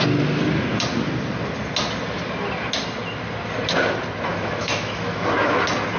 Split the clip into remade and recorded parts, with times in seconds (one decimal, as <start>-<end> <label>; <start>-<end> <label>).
0.0-4.3 recorded; 4.3-5.6 remade; 5.6-6.0 recorded